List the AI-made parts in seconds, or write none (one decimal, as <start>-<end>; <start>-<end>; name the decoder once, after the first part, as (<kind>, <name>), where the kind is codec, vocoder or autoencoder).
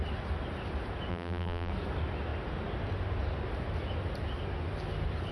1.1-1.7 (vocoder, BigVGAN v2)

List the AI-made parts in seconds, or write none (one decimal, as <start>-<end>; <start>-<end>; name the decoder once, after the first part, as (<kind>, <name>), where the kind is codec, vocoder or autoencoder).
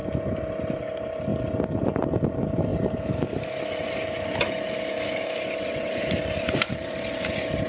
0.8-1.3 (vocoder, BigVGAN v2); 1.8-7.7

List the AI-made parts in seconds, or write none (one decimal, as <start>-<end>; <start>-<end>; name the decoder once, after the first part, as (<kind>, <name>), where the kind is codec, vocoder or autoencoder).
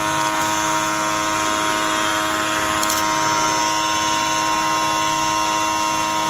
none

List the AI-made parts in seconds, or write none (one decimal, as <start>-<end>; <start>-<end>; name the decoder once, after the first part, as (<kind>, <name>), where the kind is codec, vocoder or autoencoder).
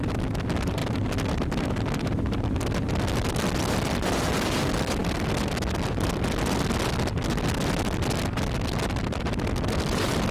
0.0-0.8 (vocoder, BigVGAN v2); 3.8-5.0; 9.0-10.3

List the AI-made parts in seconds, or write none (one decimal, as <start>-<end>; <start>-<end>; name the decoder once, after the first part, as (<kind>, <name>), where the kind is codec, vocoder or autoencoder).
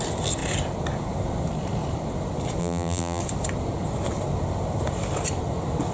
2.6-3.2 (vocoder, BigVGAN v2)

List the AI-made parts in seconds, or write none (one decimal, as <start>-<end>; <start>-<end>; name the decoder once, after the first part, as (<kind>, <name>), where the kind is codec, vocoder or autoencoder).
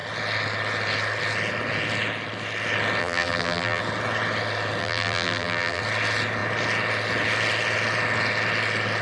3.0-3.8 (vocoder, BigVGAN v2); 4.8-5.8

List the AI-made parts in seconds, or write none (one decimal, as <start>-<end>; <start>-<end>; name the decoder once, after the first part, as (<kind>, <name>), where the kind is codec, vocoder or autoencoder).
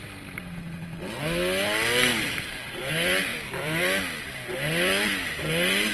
2.1-2.9 (vocoder, BigVGAN v2); 3.3-3.8